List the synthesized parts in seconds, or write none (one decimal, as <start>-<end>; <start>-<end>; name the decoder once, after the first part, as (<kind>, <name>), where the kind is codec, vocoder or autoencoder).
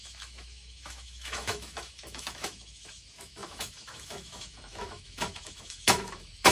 0.0-6.5 (autoencoder, DAC-VAE)